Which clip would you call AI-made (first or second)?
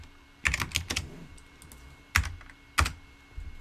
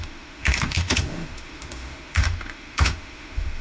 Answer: second